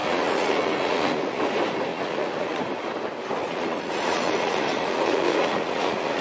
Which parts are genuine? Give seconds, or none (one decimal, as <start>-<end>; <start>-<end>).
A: 1.4-1.9; 2.6-3.4